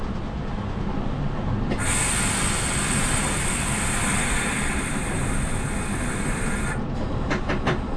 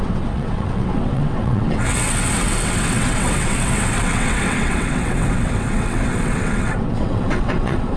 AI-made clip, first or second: second